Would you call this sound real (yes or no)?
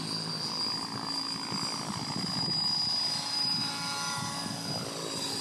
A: yes